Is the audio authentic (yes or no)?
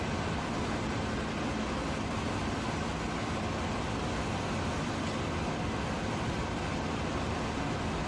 yes